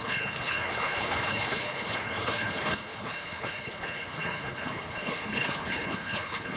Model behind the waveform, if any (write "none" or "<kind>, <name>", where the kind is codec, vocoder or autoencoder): codec, HILCodec